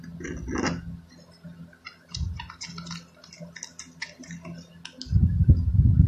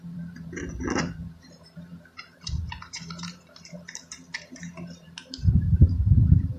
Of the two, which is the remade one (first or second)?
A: second